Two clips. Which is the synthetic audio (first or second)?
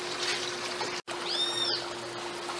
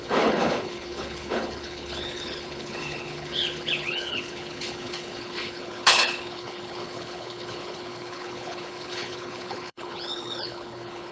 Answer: second